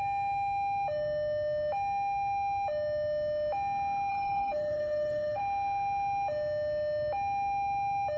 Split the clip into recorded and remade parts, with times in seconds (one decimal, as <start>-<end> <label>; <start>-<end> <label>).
0.0-4.1 recorded; 4.1-5.4 remade; 5.4-8.2 recorded